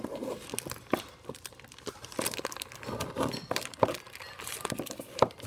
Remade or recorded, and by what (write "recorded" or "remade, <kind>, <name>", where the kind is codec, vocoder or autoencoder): recorded